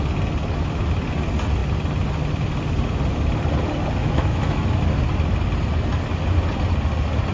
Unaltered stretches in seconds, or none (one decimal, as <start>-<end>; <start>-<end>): 0.0-4.0; 4.8-7.3